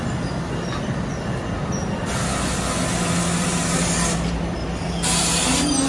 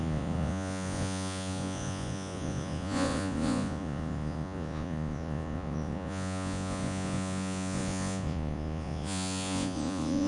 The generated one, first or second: second